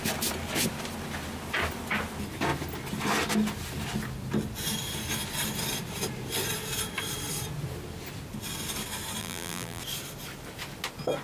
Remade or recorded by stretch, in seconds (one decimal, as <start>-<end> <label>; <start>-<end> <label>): 0.0-9.2 recorded; 9.2-9.8 remade; 9.8-11.2 recorded